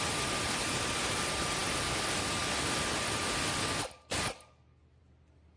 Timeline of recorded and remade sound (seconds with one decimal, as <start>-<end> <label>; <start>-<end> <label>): 0.0-5.6 recorded